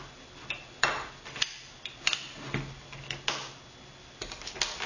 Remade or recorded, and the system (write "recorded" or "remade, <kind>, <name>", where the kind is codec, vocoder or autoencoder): recorded